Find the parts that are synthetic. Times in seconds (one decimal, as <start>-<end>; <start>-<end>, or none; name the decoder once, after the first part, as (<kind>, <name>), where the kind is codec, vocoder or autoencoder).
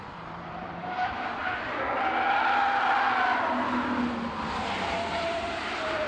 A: 0.0-1.4 (vocoder, BigVGAN v2); 5.1-6.1